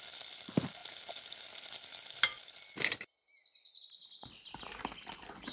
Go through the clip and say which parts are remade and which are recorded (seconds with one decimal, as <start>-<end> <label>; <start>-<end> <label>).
0.0-5.5 recorded